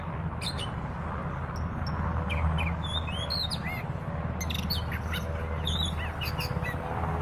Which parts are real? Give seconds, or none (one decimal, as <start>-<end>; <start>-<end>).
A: 0.0-7.2